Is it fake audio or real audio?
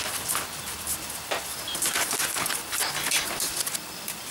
real